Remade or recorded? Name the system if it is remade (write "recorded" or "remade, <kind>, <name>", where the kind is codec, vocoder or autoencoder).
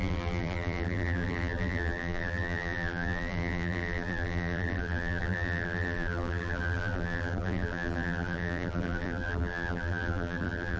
remade, vocoder, BigVGAN v2